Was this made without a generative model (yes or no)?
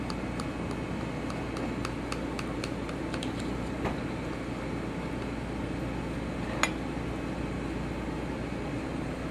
yes